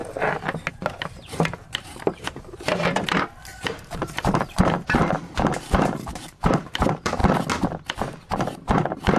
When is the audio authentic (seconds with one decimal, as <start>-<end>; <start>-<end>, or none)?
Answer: 0.0-0.7; 7.2-8.3